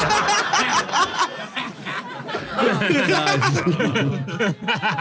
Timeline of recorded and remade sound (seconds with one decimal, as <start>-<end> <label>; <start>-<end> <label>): 0.0-5.0 recorded